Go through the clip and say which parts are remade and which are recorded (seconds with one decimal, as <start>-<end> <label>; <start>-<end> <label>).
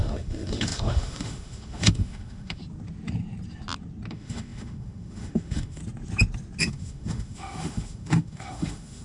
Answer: 0.0-2.6 remade; 2.6-4.1 recorded; 4.1-5.8 remade; 5.8-6.6 recorded; 6.6-9.0 remade